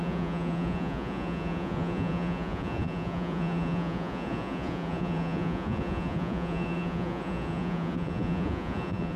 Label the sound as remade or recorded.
remade